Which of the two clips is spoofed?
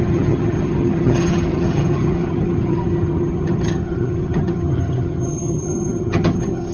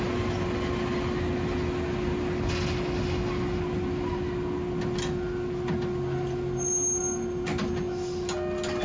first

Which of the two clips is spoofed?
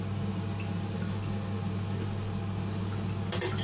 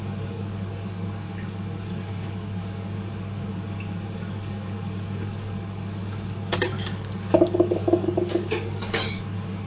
second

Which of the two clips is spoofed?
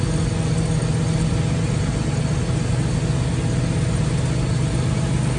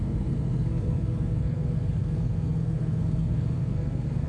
second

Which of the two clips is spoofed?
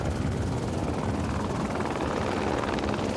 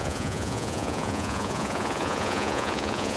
second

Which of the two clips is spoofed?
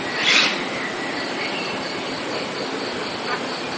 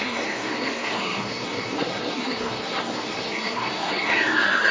second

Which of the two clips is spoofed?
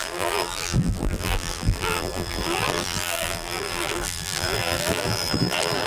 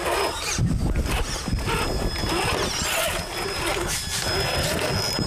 first